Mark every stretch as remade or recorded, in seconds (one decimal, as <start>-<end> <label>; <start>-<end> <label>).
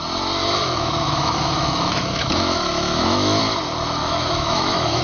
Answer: 0.0-0.4 recorded; 0.4-3.4 remade; 3.4-4.0 recorded; 4.0-5.0 remade